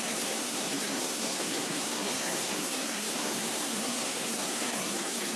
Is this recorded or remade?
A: remade